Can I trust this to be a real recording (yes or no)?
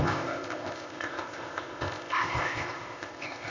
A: no